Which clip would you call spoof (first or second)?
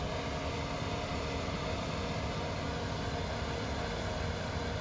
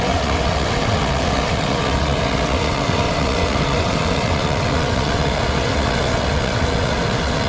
second